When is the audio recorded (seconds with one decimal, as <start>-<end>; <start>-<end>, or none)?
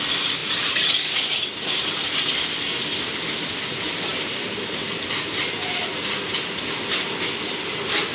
0.0-8.1